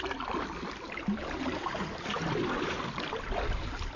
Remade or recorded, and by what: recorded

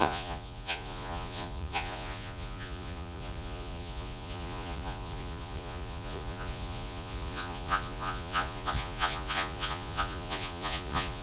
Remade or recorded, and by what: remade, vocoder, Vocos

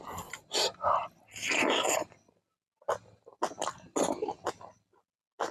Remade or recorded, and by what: recorded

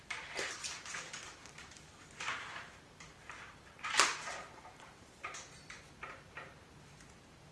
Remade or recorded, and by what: remade, vocoder, BigVGAN v2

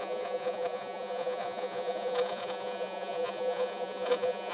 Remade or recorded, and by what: remade, vocoder, Vocos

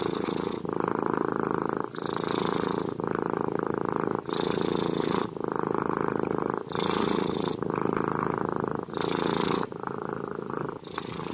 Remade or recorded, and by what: recorded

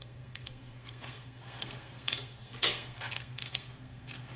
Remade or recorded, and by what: remade, codec, SNAC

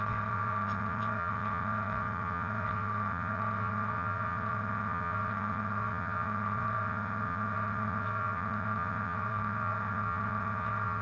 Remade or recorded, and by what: remade, vocoder, WaveNeXt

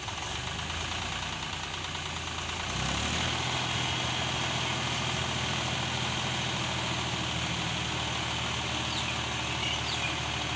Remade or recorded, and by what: recorded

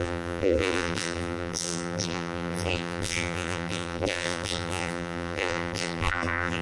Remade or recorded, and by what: remade, vocoder, BigVGAN v2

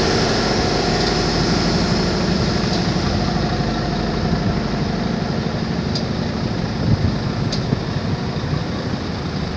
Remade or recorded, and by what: recorded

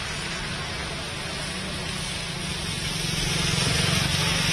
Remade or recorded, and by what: recorded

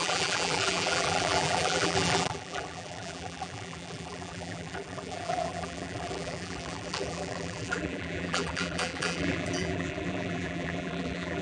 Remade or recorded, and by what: remade, vocoder, BigVGAN v2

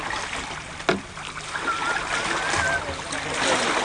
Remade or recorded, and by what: recorded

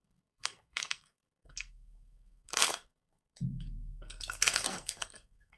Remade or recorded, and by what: remade, codec, SNAC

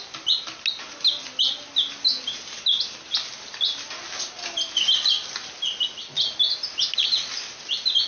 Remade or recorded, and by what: recorded